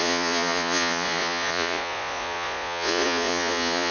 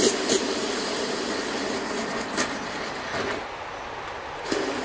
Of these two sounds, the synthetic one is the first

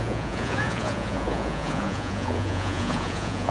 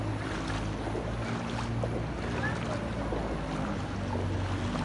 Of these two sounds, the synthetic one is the first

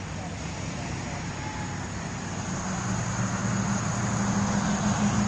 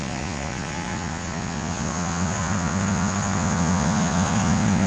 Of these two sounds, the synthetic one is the second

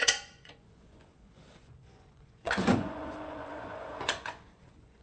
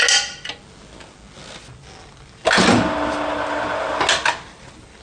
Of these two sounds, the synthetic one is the first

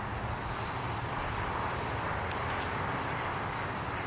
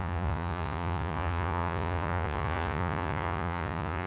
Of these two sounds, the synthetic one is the second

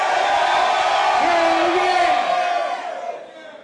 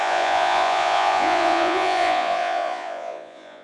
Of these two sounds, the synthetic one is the second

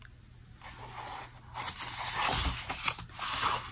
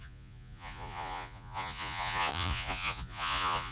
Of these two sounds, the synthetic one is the second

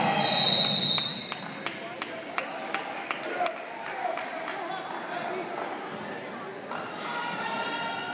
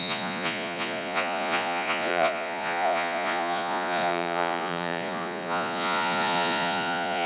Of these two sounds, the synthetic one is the second